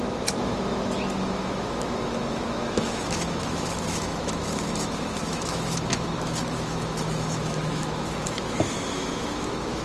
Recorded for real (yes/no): no